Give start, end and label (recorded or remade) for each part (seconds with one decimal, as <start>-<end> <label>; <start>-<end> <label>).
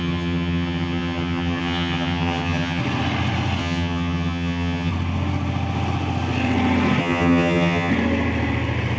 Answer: 0.0-2.8 remade; 2.8-3.6 recorded; 3.6-4.9 remade; 4.9-7.0 recorded; 7.0-7.9 remade; 7.9-9.0 recorded